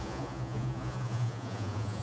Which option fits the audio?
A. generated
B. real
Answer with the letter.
A